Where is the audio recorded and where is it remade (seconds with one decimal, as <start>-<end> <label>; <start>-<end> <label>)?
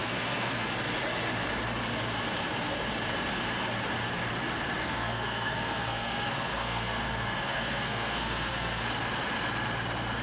0.0-0.7 remade; 0.7-4.8 recorded; 4.8-8.8 remade; 8.8-10.2 recorded